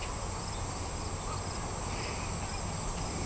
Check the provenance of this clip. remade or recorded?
recorded